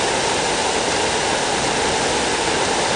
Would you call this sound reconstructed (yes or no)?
no